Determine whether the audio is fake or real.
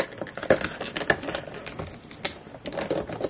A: real